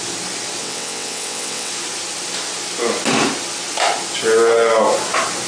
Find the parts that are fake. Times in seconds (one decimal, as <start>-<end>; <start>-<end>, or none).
0.6-1.7